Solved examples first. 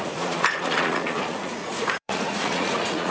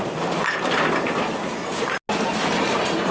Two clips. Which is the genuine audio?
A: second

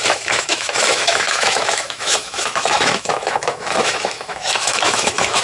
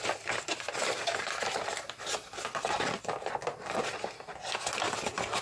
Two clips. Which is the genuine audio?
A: second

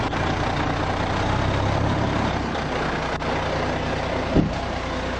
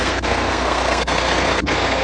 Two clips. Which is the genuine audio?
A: first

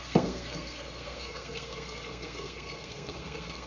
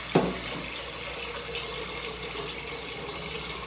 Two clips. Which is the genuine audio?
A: second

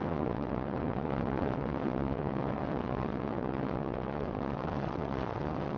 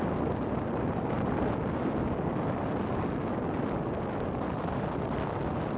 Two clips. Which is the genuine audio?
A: second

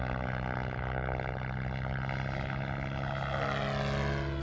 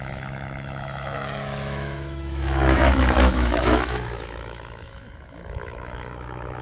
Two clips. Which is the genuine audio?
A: first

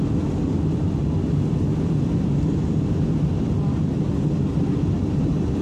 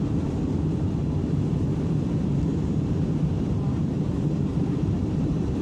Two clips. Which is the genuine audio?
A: first